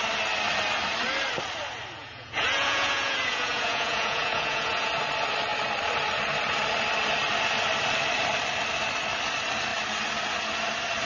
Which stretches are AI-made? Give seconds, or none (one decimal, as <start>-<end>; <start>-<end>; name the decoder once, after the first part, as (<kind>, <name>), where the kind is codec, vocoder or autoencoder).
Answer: 2.0-4.9 (vocoder, Vocos)